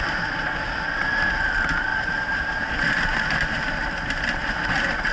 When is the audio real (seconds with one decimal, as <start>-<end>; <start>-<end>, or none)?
0.0-1.9; 2.7-5.1